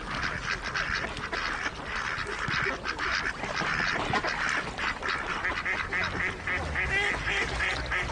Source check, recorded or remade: recorded